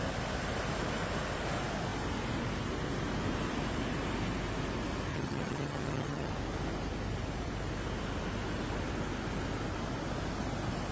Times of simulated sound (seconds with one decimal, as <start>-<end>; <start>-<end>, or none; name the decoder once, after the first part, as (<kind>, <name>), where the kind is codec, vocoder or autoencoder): 5.1-6.3 (vocoder, HiFi-GAN)